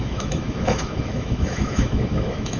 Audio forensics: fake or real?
fake